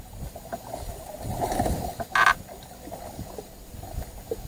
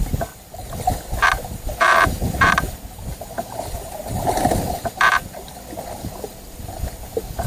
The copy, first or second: second